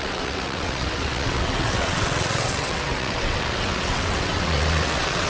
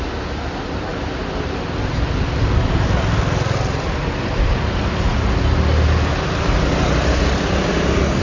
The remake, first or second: first